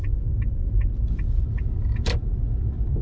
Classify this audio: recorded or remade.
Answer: remade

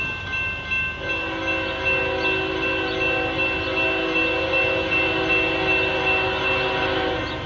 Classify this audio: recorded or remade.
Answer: recorded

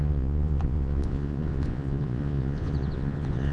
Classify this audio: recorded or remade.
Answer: remade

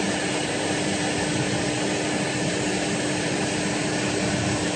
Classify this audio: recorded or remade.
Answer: recorded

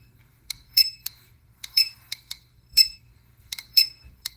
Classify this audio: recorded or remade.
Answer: remade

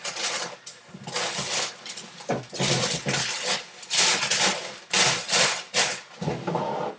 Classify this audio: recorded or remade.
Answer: recorded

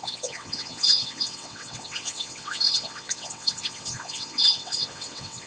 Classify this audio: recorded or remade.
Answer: remade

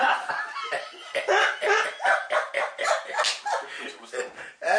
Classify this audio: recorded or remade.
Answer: recorded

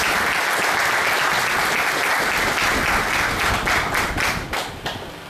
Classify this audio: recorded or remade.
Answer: recorded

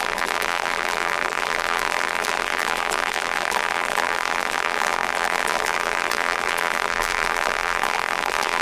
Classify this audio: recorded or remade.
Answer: remade